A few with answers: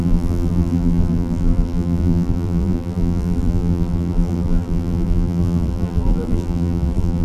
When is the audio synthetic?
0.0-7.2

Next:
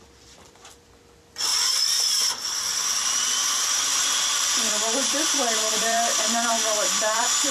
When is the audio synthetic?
0.0-7.5